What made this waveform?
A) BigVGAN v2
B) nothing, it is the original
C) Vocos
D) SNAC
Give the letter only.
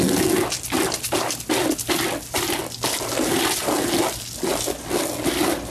B